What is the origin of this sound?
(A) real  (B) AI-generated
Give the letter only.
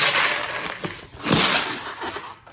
A